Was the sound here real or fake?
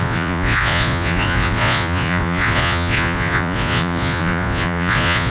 fake